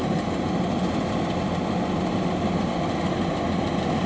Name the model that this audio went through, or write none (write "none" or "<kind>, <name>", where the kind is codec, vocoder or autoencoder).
none